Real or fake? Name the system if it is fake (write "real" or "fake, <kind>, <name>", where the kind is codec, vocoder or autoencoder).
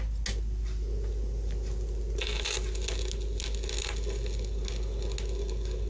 real